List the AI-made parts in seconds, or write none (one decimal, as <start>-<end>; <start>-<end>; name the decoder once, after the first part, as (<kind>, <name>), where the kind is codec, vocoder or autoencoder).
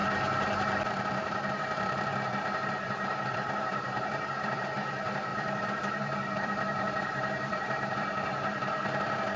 1.6-9.4 (vocoder, BigVGAN v2)